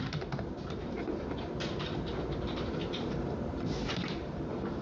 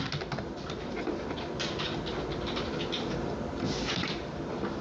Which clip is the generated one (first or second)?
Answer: first